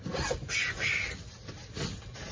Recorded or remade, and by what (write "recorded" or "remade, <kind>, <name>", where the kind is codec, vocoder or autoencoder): recorded